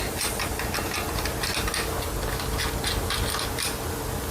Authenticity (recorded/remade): recorded